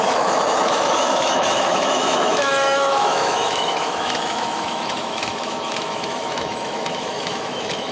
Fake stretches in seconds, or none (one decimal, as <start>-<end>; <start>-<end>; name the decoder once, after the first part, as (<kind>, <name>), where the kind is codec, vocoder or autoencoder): 0.0-7.9 (autoencoder, DAC-VAE)